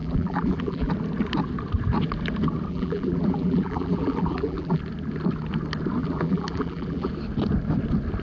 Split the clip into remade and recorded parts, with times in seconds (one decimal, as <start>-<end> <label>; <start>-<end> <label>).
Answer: 0.0-0.9 remade; 0.9-2.7 recorded; 2.7-4.8 remade; 4.8-6.0 recorded; 6.0-7.1 remade; 7.1-8.2 recorded